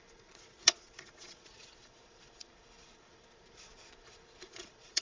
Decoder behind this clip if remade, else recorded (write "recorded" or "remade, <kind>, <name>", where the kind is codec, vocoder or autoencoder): remade, vocoder, Vocos